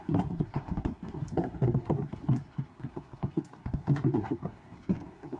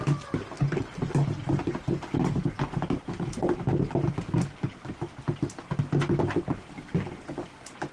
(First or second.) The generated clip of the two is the first